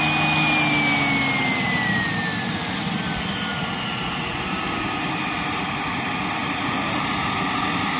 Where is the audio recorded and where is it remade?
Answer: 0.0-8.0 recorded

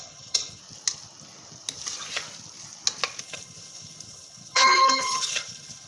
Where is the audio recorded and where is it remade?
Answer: 0.0-0.6 remade; 0.6-3.2 recorded; 3.2-5.9 remade

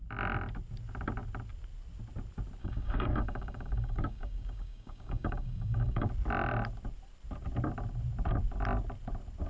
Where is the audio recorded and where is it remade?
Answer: 0.0-2.6 recorded; 2.6-6.1 remade; 6.1-9.5 recorded

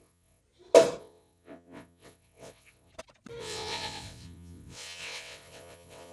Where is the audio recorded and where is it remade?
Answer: 0.0-0.4 remade; 0.4-1.0 recorded; 1.0-2.9 remade; 2.9-3.4 recorded; 3.4-6.1 remade

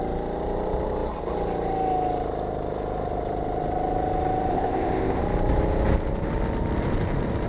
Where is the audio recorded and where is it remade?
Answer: 0.0-4.5 recorded; 4.5-5.2 remade; 5.2-7.5 recorded